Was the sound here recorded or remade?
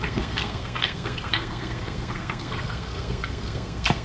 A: remade